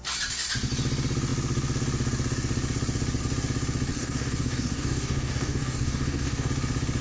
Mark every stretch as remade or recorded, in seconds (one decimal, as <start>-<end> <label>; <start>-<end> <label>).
0.0-3.9 recorded; 3.9-6.5 remade; 6.5-7.0 recorded